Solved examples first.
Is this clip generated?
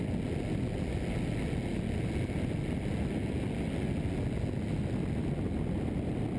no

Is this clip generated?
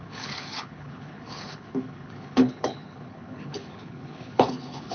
yes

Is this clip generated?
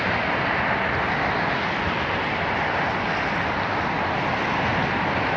no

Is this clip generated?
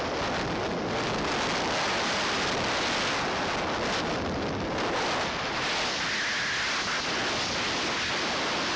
no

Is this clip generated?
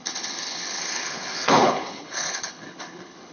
yes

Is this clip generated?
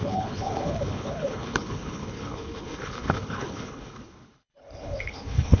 yes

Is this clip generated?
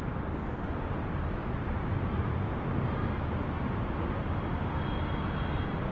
no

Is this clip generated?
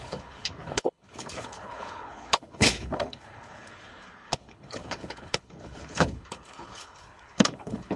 yes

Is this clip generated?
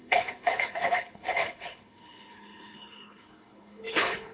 yes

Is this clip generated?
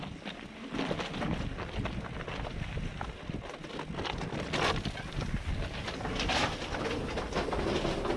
no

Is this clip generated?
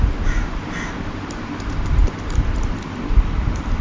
no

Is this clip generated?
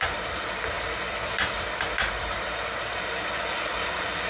no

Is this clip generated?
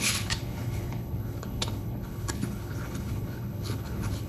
yes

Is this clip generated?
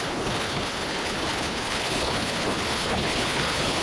yes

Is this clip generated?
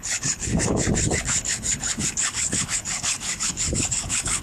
yes